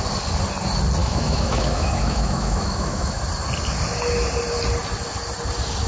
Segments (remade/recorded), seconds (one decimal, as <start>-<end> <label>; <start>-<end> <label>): 0.0-1.0 recorded; 1.0-3.2 remade; 3.2-5.9 recorded